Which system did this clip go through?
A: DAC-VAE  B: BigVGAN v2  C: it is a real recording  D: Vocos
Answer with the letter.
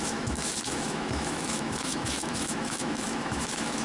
A